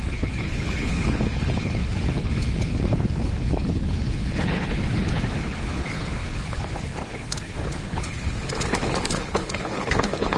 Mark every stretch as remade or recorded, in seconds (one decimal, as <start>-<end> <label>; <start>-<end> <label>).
0.0-10.4 remade